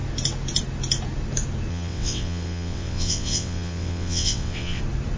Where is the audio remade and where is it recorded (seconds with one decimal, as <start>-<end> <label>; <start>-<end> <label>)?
0.0-1.7 recorded; 1.7-4.8 remade; 4.8-5.2 recorded